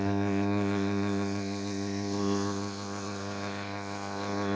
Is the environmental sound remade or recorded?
remade